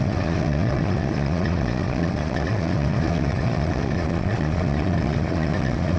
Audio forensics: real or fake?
fake